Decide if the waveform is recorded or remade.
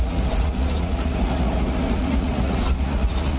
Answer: remade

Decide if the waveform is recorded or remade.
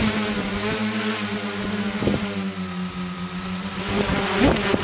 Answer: recorded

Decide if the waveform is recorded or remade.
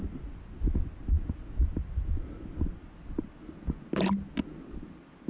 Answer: recorded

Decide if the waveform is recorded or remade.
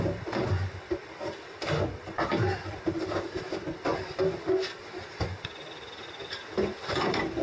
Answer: recorded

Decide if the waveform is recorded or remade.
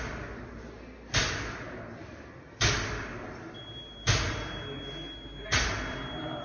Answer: recorded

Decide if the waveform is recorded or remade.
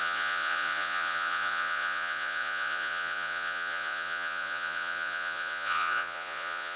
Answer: remade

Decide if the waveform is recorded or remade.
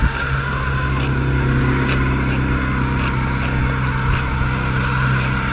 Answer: recorded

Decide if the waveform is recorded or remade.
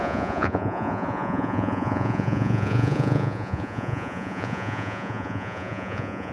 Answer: remade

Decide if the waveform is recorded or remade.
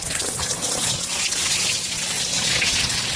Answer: remade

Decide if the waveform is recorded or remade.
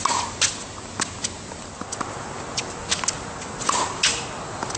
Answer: recorded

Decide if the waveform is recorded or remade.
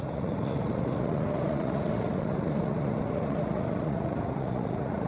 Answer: remade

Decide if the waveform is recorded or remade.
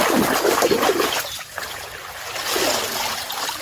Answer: recorded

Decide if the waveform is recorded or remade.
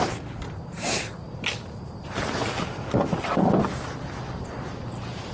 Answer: recorded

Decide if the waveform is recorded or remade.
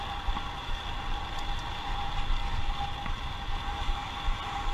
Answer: recorded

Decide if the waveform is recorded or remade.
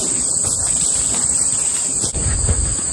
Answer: recorded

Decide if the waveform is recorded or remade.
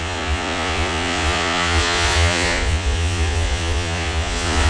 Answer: remade